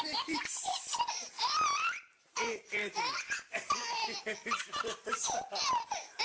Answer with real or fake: real